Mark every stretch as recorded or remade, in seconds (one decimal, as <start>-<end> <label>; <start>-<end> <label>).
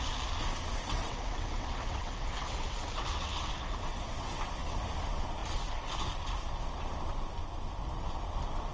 0.0-0.7 recorded; 0.7-4.5 remade; 4.5-8.7 recorded